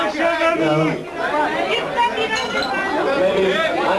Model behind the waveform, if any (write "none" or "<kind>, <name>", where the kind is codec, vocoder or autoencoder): none